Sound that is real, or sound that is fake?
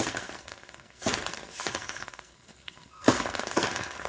fake